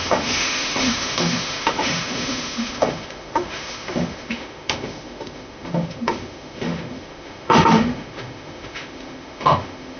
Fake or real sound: fake